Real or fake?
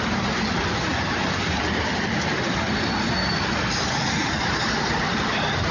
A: real